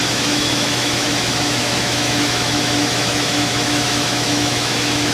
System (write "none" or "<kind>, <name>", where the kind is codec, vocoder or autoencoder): autoencoder, DAC-VAE